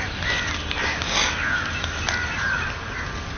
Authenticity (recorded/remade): recorded